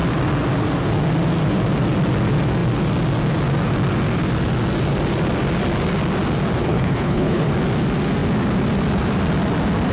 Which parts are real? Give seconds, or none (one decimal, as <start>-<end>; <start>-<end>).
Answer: 0.0-6.6; 7.5-9.9